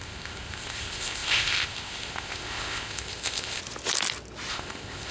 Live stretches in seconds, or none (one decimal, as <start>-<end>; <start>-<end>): 3.6-4.5